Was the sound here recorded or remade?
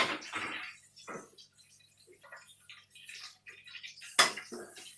recorded